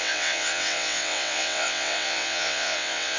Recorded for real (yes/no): no